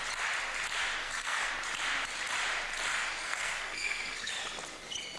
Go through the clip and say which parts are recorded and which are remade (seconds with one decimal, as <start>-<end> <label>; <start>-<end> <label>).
0.0-1.0 recorded; 1.0-1.5 remade; 1.5-2.9 recorded; 2.9-4.3 remade; 4.3-5.2 recorded